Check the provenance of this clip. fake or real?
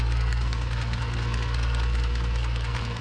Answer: fake